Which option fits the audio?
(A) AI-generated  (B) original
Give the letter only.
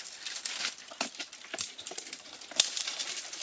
B